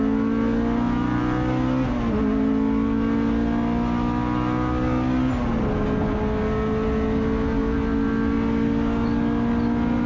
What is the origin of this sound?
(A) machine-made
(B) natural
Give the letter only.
B